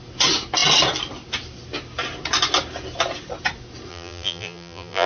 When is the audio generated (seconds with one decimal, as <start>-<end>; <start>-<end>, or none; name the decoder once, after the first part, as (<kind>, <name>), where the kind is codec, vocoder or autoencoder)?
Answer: 3.9-5.1 (vocoder, BigVGAN v2)